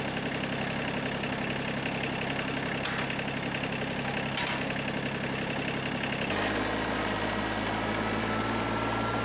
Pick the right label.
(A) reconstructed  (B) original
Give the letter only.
B